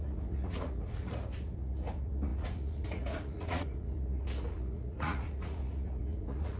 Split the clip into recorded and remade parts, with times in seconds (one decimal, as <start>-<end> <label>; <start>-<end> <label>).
0.0-6.6 remade